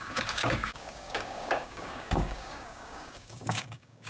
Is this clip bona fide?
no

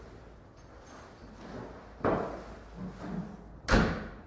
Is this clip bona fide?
yes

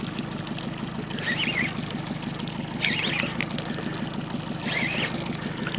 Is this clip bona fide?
yes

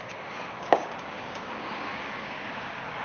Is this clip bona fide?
no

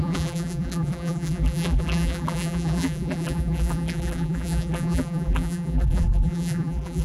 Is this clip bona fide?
no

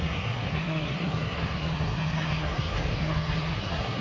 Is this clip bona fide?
no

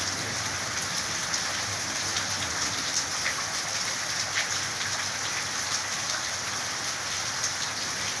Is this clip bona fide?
yes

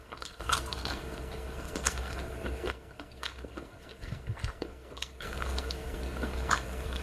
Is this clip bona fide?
no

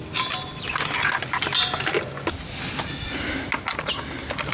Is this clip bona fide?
yes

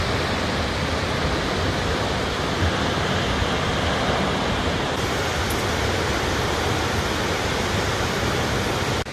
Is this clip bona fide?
yes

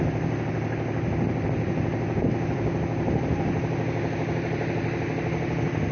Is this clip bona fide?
yes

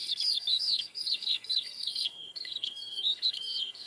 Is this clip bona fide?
no